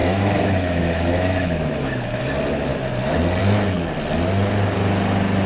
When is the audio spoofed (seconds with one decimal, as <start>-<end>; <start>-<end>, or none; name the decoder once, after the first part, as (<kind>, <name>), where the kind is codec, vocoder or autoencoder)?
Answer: 0.0-2.2 (autoencoder, DAC-VAE)